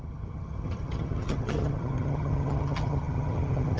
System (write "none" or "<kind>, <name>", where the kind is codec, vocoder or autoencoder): vocoder, HiFi-GAN